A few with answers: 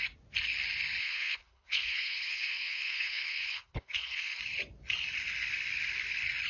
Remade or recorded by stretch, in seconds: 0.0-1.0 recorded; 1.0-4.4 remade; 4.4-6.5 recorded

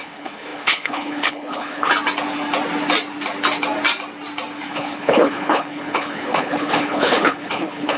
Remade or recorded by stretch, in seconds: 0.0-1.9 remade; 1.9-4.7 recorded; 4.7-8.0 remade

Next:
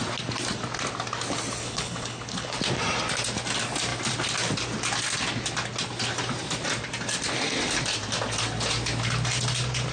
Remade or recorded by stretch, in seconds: 0.0-1.6 recorded; 1.6-2.6 remade; 2.6-9.9 recorded

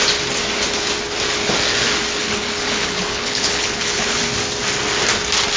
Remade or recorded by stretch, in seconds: 0.0-2.2 recorded; 2.2-4.2 remade; 4.2-5.6 recorded

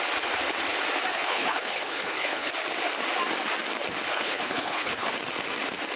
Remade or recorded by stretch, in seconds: 0.0-1.1 recorded; 1.1-2.5 remade; 2.5-4.1 recorded; 4.1-5.1 remade; 5.1-6.0 recorded

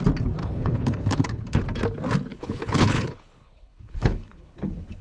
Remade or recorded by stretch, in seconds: 0.0-0.4 recorded; 0.4-1.6 remade; 1.6-2.3 recorded; 2.3-5.0 remade